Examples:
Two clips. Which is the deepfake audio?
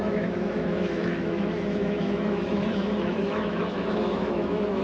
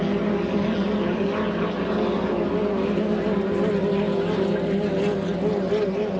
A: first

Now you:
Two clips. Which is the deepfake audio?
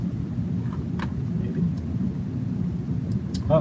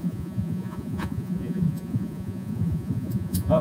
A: second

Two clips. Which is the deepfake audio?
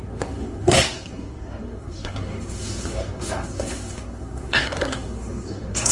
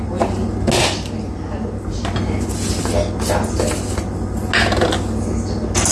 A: first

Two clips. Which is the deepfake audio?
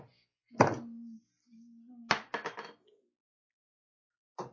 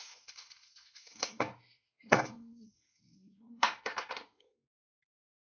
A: second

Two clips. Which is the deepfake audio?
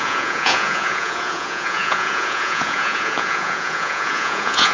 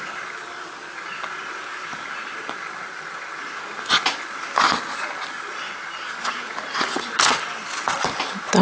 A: first